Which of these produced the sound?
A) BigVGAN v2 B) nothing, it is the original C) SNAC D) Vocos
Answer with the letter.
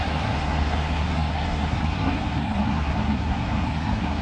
C